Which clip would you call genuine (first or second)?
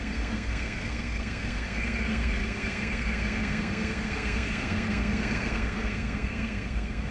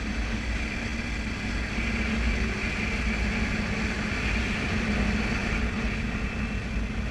second